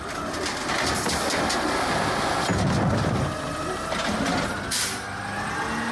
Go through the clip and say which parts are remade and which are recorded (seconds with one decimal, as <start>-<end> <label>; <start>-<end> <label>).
0.0-5.9 recorded